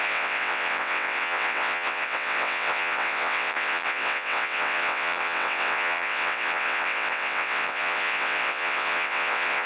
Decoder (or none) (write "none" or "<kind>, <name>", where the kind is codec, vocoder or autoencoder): vocoder, WaveNeXt